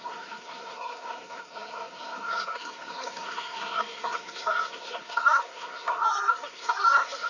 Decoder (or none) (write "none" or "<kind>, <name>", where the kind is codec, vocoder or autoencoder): codec, SNAC